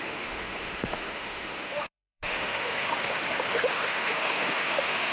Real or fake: fake